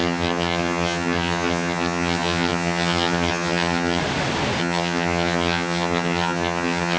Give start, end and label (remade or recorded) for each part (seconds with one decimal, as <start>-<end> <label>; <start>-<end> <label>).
0.0-4.0 remade; 4.0-4.6 recorded; 4.6-7.0 remade